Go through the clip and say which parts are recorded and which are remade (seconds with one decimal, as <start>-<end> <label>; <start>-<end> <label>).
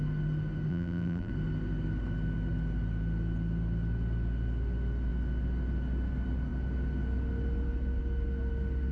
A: 0.0-0.7 recorded; 0.7-1.3 remade; 1.3-8.9 recorded